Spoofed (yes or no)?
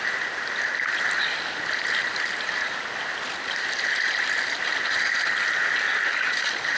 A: no